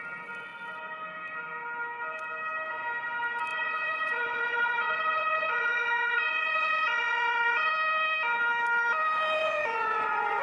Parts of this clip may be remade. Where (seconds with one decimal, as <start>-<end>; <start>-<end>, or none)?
3.5-7.7; 9.4-10.4